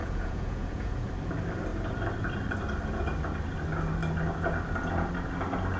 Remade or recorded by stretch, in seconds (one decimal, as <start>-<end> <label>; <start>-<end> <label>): 0.0-1.1 remade; 1.1-5.8 recorded

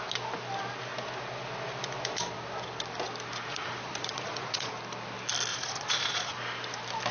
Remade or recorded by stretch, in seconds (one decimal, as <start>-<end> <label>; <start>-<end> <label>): 0.0-3.5 recorded; 3.5-4.7 remade; 4.7-5.5 recorded; 5.5-6.4 remade; 6.4-7.1 recorded

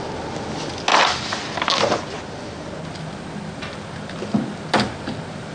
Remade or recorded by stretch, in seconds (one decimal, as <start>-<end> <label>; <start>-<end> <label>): 0.0-5.5 recorded